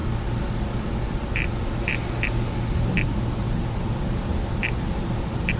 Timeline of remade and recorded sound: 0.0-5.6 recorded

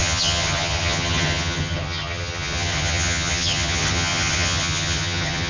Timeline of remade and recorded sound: 0.0-5.5 remade

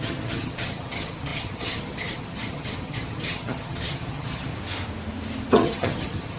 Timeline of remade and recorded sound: 0.0-4.5 remade; 4.5-5.5 recorded; 5.5-6.4 remade